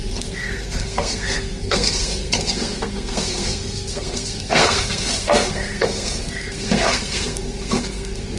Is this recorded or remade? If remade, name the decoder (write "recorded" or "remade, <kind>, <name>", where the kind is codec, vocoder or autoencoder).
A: remade, codec, SNAC